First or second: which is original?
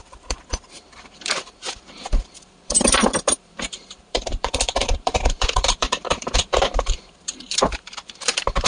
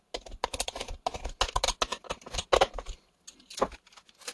second